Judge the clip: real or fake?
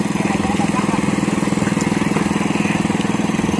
real